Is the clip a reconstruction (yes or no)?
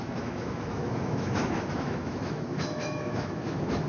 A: yes